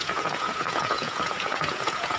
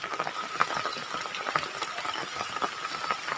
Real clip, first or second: second